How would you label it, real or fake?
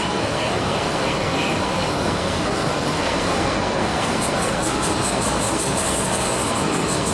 fake